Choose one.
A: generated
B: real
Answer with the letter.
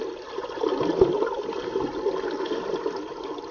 B